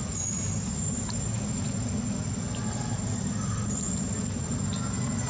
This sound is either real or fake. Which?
real